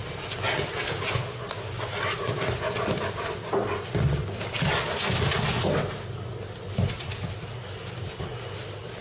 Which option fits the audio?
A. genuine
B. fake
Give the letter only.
A